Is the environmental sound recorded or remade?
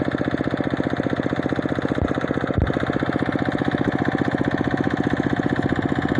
recorded